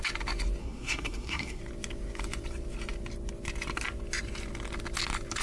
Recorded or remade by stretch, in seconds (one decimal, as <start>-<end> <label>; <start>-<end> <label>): 0.0-0.6 recorded; 0.6-1.6 remade; 1.6-5.4 recorded